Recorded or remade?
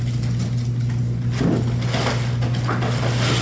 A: recorded